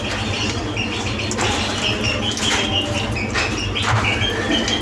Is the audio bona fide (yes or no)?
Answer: yes